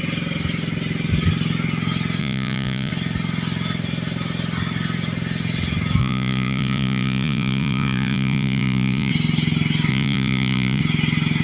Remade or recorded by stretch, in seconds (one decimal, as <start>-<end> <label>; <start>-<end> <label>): 0.0-2.2 recorded; 2.2-2.9 remade; 2.9-6.0 recorded; 6.0-9.1 remade; 9.1-9.9 recorded; 9.9-10.8 remade; 10.8-11.4 recorded